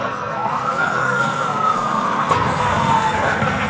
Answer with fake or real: fake